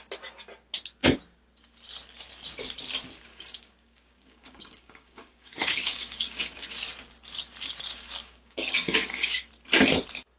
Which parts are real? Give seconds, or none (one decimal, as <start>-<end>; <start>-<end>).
0.0-3.3; 6.8-7.9; 9.5-10.4